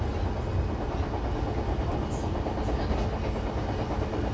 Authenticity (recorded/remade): recorded